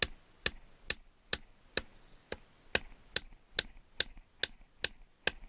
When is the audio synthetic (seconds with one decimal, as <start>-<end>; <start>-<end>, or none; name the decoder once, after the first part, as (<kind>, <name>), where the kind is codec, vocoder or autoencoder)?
none